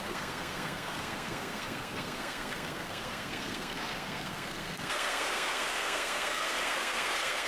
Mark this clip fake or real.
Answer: fake